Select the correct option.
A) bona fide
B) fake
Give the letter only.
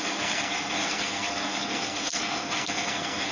B